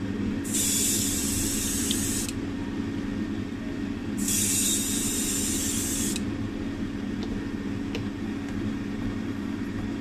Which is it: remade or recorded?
recorded